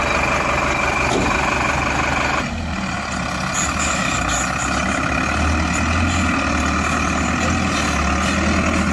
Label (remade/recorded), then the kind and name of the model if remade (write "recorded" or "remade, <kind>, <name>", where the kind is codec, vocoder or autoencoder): recorded